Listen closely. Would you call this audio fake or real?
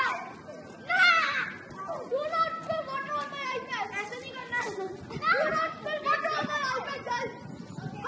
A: real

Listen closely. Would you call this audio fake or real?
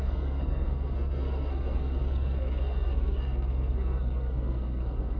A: fake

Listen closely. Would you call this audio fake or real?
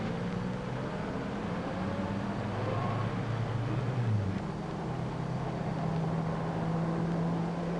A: real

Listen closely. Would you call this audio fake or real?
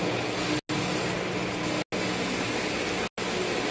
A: real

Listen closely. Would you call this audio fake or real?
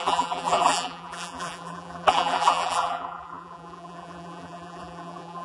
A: fake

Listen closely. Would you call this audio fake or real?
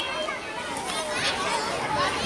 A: real